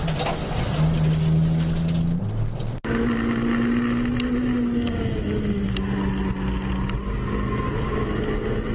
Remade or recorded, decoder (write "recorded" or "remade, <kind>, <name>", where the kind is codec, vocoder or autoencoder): recorded